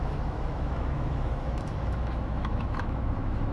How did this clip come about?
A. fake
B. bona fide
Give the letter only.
A